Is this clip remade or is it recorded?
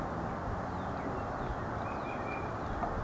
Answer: recorded